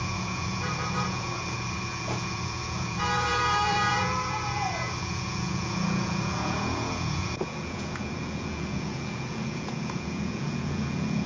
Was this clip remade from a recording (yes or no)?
yes